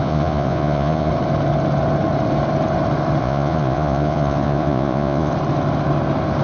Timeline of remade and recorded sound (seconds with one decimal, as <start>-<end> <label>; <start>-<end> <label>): 0.0-1.1 remade; 1.1-3.2 recorded; 3.2-5.3 remade; 5.3-6.4 recorded